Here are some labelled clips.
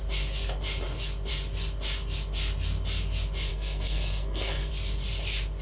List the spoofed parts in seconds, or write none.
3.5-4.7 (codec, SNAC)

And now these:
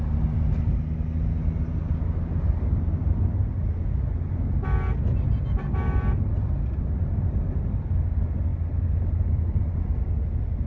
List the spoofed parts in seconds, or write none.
none

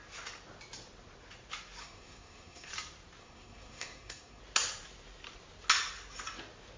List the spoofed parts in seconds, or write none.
1.8-2.7 (codec, SNAC); 3.2-4.4